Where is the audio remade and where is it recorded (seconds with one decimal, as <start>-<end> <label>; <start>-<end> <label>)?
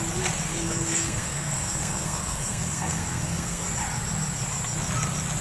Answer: 0.0-0.5 recorded; 0.5-3.7 remade; 3.7-5.4 recorded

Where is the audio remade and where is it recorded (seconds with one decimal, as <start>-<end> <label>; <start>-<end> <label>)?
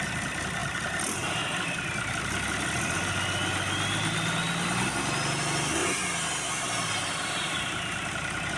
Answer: 0.0-8.6 recorded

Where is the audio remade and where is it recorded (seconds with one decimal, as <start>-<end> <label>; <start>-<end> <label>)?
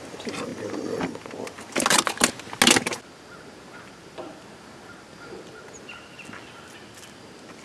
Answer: 0.0-7.6 recorded